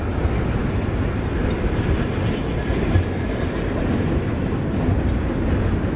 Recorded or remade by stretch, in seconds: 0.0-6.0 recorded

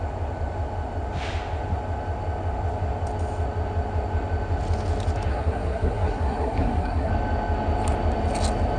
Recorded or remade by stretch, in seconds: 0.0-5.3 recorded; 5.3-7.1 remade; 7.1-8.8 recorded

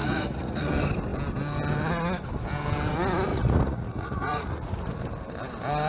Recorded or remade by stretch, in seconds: 0.0-0.7 remade; 0.7-3.3 recorded; 3.3-4.9 remade; 4.9-5.9 recorded

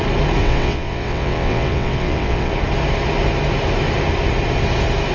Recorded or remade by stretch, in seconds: 0.0-0.4 recorded; 0.4-2.5 remade; 2.5-5.1 recorded

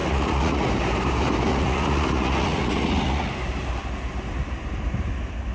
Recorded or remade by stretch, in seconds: 0.0-0.7 remade; 0.7-1.5 recorded; 1.5-3.3 remade; 3.3-5.5 recorded

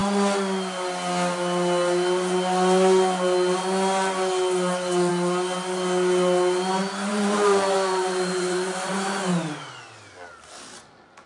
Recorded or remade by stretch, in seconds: 0.0-7.1 recorded; 7.1-8.9 remade; 8.9-11.3 recorded

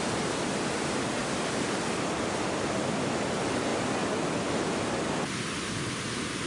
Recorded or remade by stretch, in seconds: 0.0-6.5 recorded

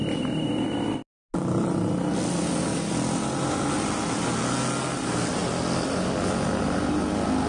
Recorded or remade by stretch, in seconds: 0.0-7.5 recorded